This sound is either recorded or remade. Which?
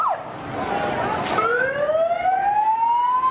recorded